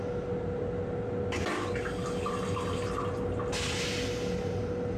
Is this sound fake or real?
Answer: real